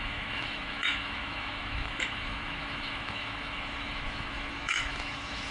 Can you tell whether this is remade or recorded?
remade